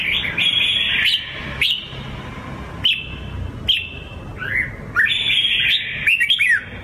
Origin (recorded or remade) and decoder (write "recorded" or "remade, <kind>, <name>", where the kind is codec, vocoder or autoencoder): recorded